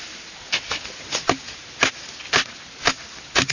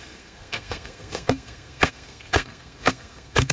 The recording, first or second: first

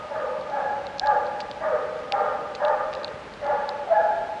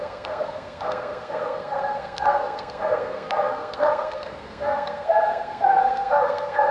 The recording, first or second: first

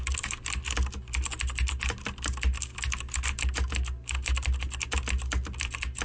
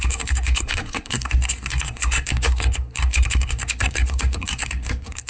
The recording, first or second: first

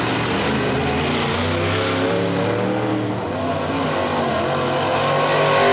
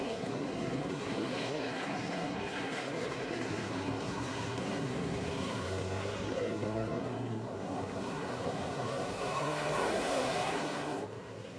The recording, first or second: first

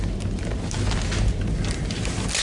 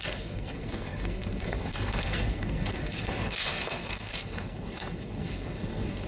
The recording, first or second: first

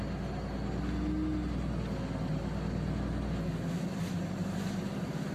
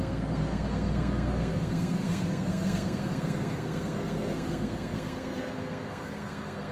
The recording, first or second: first